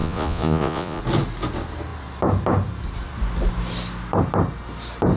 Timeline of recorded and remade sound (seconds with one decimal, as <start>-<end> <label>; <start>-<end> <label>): 0.0-1.0 remade; 1.0-5.2 recorded